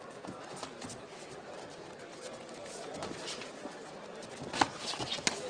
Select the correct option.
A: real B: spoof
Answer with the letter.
A